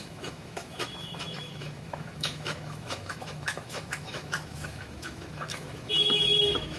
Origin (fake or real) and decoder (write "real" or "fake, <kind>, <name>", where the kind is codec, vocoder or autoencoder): fake, autoencoder, DAC-VAE